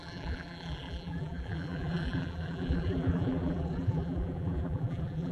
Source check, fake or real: fake